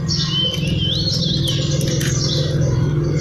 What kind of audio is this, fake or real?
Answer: real